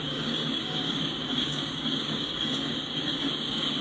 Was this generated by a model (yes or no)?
yes